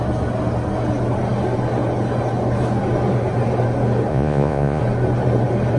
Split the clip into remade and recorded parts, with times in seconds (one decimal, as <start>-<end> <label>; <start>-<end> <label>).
0.0-4.1 recorded; 4.1-4.8 remade; 4.8-5.8 recorded